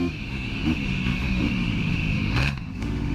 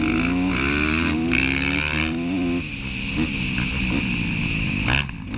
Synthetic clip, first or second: first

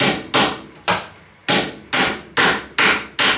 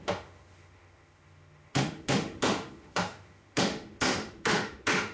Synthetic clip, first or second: second